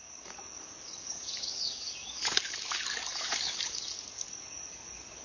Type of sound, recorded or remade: remade